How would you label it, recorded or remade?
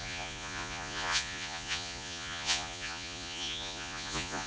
remade